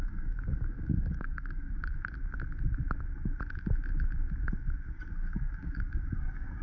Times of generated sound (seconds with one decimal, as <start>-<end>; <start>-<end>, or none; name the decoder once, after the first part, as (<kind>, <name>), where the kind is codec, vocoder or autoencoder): 0.0-1.8 (codec, DAC); 5.2-6.6